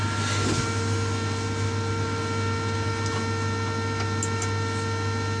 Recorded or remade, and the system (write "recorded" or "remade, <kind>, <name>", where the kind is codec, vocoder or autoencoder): recorded